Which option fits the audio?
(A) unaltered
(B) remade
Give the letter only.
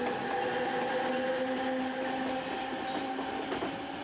A